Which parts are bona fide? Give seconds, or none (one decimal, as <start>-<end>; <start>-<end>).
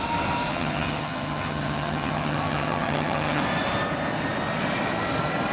0.0-0.5; 3.4-5.5